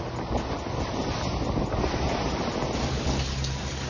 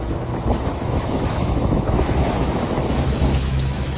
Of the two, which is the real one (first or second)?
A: first